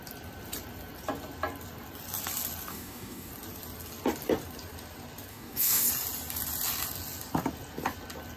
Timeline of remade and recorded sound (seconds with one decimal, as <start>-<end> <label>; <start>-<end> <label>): 0.0-2.7 recorded; 2.7-3.3 remade; 3.3-5.3 recorded; 5.3-5.9 remade; 5.9-8.4 recorded